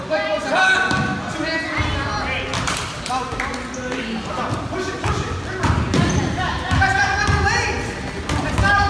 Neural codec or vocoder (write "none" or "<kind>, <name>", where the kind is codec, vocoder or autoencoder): none